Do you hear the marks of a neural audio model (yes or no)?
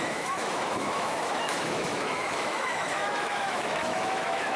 yes